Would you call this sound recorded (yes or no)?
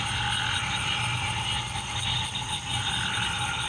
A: yes